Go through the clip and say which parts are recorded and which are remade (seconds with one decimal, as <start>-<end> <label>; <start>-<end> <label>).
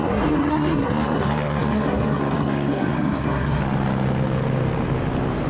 0.0-3.6 remade; 3.6-5.5 recorded